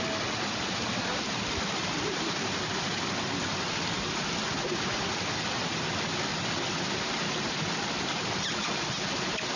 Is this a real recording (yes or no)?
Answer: yes